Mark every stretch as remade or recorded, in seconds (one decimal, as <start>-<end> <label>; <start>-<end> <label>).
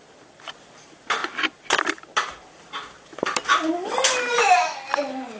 0.0-5.4 recorded